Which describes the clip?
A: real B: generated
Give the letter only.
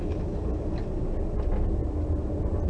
A